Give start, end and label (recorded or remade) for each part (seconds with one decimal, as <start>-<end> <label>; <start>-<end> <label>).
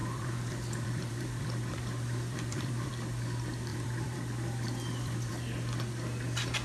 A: 0.0-2.9 remade; 2.9-3.7 recorded; 3.7-5.3 remade; 5.3-6.6 recorded